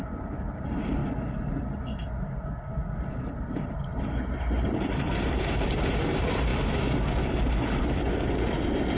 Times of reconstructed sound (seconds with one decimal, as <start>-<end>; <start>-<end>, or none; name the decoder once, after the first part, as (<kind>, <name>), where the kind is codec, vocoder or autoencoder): 0.0-1.0 (vocoder, BigVGAN v2); 3.1-6.5; 8.2-9.0